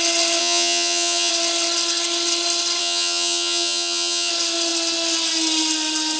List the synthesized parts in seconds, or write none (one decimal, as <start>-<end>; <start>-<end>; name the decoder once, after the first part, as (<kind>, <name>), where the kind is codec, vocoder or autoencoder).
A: 0.4-1.3 (vocoder, HiFi-GAN); 2.8-4.3